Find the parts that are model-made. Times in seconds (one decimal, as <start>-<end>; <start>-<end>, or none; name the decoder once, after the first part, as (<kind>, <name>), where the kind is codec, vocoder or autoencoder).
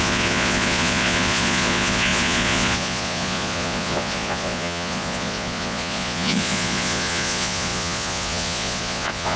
0.0-9.4 (vocoder, Vocos)